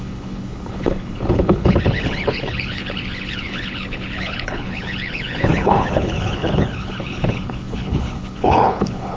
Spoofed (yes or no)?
yes